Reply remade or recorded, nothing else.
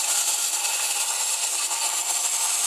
recorded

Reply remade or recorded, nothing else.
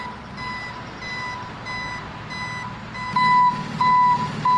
recorded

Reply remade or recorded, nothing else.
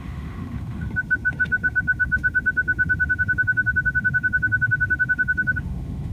remade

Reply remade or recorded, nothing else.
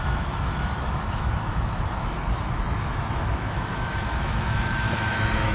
remade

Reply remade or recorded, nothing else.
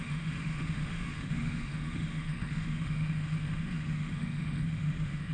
remade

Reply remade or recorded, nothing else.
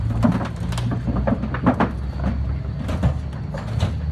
recorded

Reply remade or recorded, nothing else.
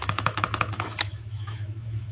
remade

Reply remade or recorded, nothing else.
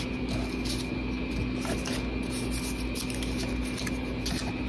recorded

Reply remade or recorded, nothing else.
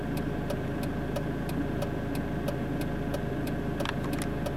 recorded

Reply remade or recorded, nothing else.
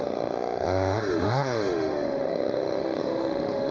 remade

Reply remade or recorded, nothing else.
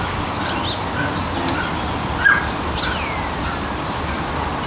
recorded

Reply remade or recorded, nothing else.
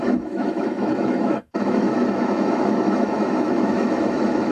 remade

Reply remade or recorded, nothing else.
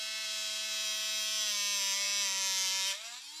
recorded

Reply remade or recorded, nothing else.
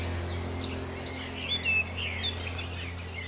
recorded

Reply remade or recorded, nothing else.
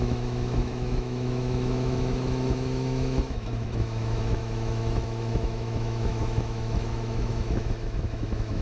remade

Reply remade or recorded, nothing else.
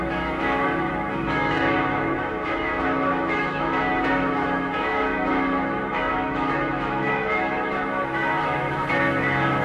remade